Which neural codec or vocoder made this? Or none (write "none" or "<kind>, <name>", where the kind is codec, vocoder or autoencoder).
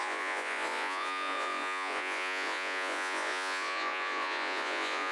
vocoder, Vocos